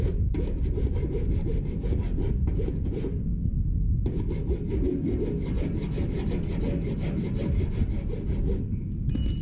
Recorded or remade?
recorded